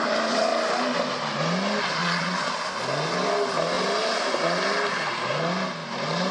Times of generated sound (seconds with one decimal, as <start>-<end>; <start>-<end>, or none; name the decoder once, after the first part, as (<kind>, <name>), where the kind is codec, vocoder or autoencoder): 2.0-2.6 (vocoder, Vocos)